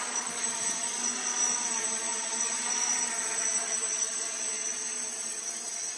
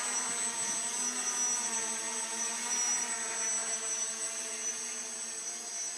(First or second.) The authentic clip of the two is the second